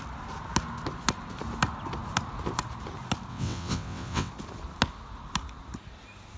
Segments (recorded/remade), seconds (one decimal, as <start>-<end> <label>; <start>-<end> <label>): 0.0-3.3 recorded; 3.3-4.3 remade; 4.3-6.4 recorded